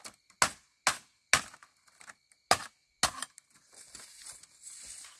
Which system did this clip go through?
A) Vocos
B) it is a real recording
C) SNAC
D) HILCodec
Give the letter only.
B